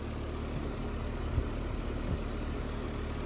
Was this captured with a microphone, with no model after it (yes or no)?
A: yes